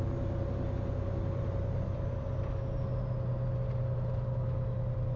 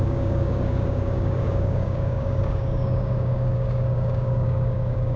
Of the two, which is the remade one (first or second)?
second